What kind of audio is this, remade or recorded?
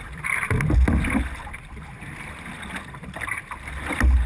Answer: recorded